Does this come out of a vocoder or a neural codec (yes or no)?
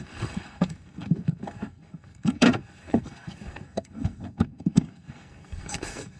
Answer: yes